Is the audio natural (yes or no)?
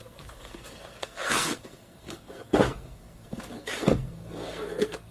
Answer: no